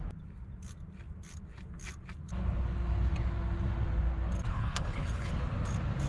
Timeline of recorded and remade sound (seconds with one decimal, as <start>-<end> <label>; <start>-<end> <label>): 0.0-4.5 recorded; 4.5-5.3 remade; 5.3-6.1 recorded